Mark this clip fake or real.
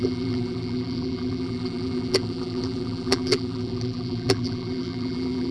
fake